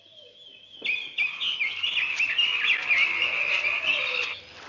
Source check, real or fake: real